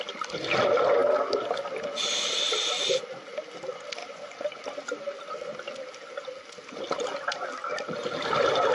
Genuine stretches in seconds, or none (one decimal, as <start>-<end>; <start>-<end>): 0.0-4.0; 4.6-8.7